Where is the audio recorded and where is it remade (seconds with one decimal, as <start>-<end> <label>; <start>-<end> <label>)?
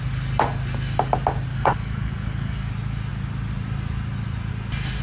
0.0-1.5 recorded; 1.5-2.7 remade; 2.7-5.0 recorded